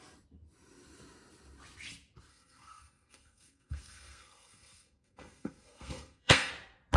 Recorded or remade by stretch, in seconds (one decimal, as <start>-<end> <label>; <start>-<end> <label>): 0.0-2.3 recorded; 2.3-6.5 remade; 6.5-7.0 recorded